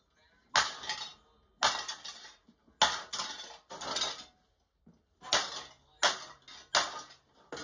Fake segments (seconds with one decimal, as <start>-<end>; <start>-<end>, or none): none